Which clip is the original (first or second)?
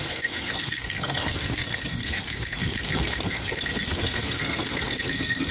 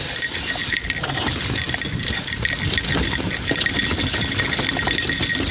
second